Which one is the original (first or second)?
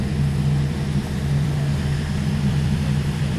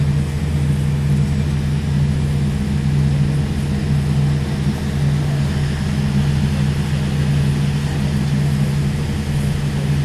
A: second